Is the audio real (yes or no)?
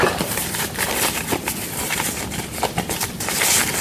no